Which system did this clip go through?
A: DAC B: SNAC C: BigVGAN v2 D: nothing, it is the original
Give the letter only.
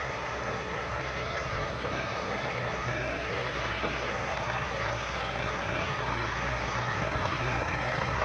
B